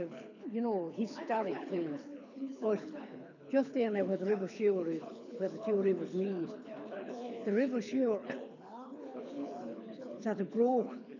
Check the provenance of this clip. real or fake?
fake